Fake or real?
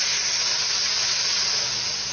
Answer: real